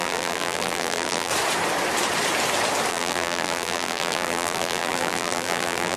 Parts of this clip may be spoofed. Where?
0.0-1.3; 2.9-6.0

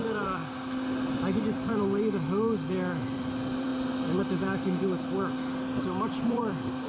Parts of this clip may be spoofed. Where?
0.0-0.4; 1.1-3.7; 4.2-6.9